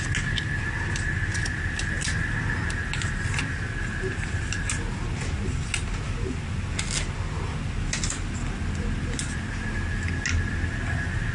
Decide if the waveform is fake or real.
real